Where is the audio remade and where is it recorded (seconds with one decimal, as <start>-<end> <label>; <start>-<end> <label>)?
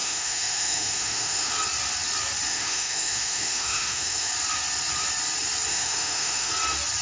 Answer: 0.0-1.5 remade; 1.5-2.5 recorded; 2.5-4.3 remade; 4.3-5.7 recorded; 5.7-6.5 remade; 6.5-7.0 recorded